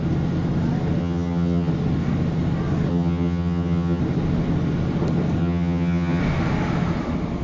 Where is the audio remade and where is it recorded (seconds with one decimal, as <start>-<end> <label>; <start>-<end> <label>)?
0.0-1.0 recorded; 1.0-1.7 remade; 1.7-2.9 recorded; 2.9-4.0 remade; 4.0-5.4 recorded; 5.4-6.2 remade; 6.2-7.4 recorded